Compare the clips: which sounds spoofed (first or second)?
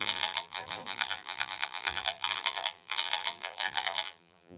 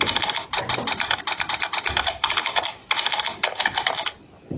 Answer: first